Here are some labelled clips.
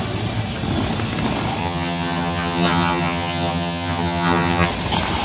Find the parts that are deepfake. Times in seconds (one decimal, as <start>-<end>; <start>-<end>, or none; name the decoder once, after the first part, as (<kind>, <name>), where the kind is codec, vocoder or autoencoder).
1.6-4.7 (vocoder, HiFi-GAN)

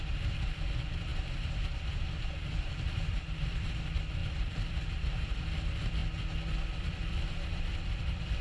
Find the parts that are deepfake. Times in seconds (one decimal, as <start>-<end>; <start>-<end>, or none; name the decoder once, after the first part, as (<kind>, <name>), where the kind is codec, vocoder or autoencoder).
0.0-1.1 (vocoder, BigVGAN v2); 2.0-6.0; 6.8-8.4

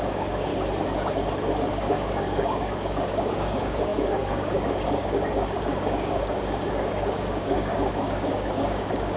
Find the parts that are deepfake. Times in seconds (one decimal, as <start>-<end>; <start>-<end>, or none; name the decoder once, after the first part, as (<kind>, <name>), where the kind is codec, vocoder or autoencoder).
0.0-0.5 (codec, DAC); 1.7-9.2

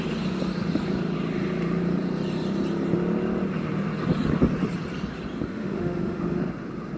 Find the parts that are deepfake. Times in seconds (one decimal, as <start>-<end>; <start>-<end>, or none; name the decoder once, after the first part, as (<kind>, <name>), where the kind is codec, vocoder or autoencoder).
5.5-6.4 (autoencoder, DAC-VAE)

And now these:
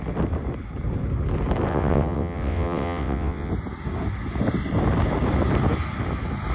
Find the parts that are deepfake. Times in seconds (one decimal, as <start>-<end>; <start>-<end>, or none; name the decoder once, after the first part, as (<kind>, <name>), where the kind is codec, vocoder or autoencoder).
1.7-3.5 (vocoder, WaveNeXt)

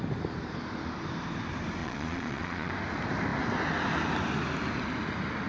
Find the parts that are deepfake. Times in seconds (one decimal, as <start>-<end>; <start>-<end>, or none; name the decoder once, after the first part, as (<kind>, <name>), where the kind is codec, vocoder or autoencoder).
1.8-2.7 (vocoder, Vocos)